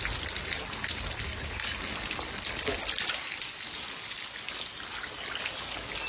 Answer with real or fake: real